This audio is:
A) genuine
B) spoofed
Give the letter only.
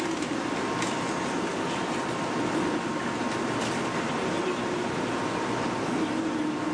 A